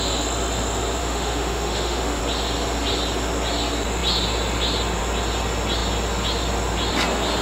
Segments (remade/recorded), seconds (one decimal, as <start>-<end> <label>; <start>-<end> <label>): 0.0-1.0 recorded; 1.0-2.2 remade; 2.2-7.4 recorded